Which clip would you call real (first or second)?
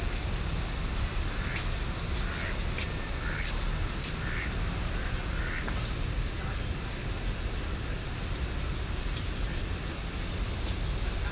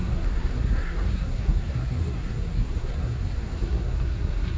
first